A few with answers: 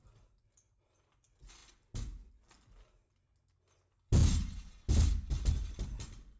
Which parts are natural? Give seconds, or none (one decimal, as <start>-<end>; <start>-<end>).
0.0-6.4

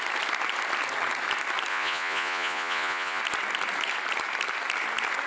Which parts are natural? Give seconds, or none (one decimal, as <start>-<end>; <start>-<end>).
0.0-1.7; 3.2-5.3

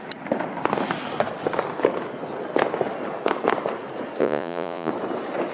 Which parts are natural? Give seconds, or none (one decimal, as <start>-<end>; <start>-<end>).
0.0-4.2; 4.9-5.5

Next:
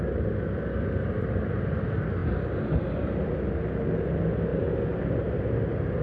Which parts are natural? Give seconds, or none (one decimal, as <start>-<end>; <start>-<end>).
0.0-6.0

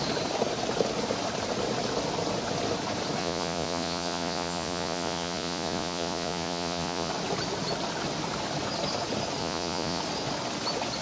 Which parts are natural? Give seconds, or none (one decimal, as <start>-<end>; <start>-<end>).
0.0-3.2; 7.1-9.4; 10.0-11.0

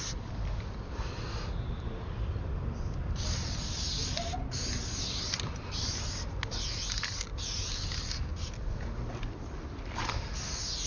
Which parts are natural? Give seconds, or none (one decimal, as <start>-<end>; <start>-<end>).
0.0-10.9

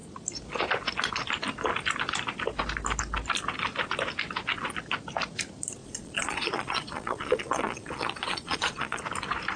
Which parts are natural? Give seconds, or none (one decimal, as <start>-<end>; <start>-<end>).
0.0-5.8; 9.0-9.6